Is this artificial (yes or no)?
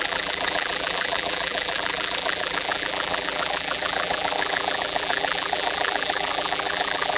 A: yes